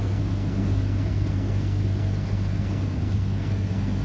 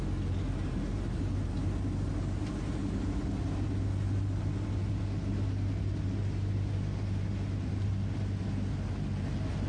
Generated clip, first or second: first